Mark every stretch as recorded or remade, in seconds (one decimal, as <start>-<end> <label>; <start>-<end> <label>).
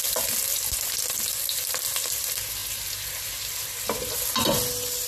0.0-5.1 recorded